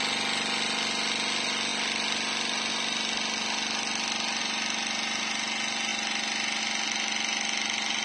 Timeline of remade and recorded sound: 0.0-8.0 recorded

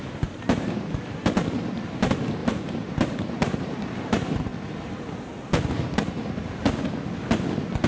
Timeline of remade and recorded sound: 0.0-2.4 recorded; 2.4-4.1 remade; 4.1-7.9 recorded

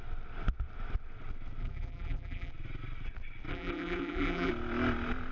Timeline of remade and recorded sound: 0.0-1.6 recorded; 1.6-2.5 remade; 2.5-3.5 recorded; 3.5-4.5 remade; 4.5-5.3 recorded